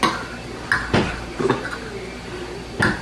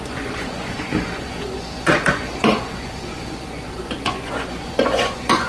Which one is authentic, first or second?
first